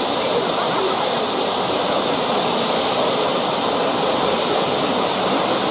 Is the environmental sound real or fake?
real